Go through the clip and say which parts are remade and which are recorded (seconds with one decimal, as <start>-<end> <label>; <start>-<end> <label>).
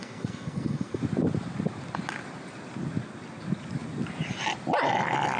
0.0-1.0 remade; 1.0-5.4 recorded